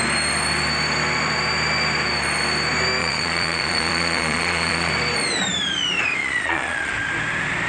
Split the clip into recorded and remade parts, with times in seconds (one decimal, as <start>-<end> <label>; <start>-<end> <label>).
0.0-3.0 recorded; 3.0-4.9 remade; 4.9-6.2 recorded; 6.2-6.9 remade; 6.9-7.7 recorded